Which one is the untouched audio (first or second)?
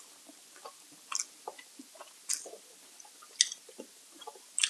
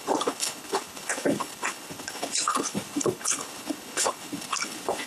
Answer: first